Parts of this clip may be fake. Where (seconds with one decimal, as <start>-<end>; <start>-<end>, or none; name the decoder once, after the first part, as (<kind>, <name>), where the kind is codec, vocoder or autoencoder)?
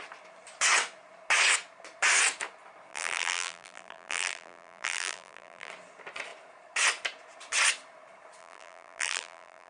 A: 2.9-5.7 (vocoder, BigVGAN v2); 8.4-9.7